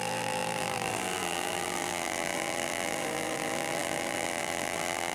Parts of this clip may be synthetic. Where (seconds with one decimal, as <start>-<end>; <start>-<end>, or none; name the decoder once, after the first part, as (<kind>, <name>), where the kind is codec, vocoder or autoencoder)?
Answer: 0.0-5.1 (vocoder, BigVGAN v2)